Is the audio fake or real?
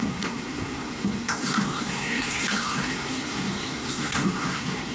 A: fake